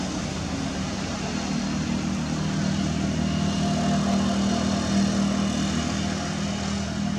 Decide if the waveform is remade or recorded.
recorded